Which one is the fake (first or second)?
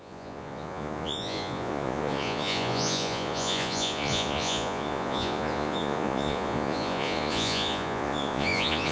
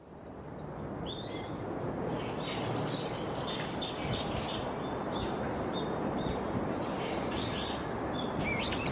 first